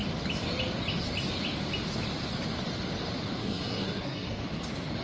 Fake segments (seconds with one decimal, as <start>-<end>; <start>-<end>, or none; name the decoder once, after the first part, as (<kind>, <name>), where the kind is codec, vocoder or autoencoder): 3.4-4.4 (codec, SNAC)